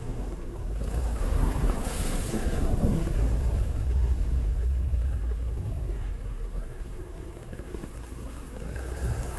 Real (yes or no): no